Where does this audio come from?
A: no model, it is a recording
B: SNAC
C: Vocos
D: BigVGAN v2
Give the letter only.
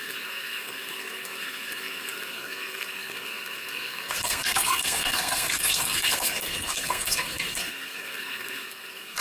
B